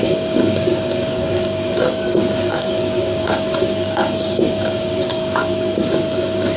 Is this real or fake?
fake